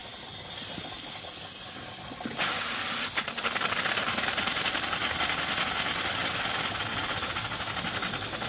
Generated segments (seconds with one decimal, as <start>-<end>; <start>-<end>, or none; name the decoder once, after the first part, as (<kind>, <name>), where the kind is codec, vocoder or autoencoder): none